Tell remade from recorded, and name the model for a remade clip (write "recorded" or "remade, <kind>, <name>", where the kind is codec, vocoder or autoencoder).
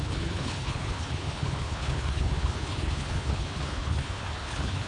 remade, codec, HILCodec